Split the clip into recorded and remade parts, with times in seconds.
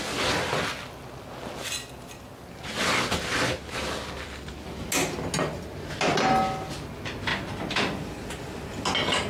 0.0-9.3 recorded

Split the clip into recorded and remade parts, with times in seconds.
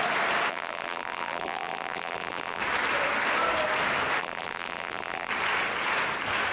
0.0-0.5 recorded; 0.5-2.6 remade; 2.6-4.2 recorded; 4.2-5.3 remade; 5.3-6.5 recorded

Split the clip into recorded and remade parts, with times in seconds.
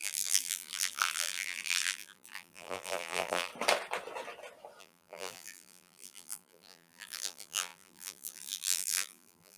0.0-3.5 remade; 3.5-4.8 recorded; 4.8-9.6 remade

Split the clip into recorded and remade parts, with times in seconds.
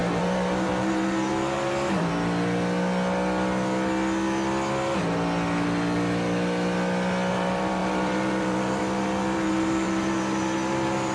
0.0-2.1 remade; 2.1-7.3 recorded; 7.3-11.1 remade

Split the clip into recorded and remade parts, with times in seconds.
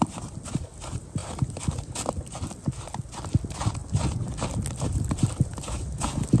0.0-1.2 recorded; 1.2-2.1 remade; 2.1-3.8 recorded; 3.8-5.7 remade; 5.7-6.4 recorded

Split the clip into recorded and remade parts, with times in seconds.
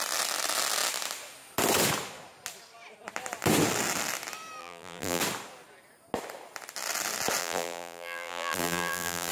0.0-4.6 recorded; 4.6-5.2 remade; 5.2-7.4 recorded; 7.4-9.3 remade